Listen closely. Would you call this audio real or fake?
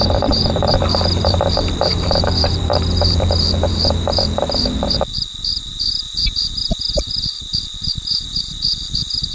fake